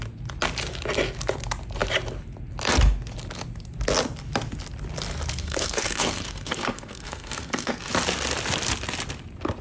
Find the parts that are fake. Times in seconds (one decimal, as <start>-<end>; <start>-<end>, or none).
5.4-7.9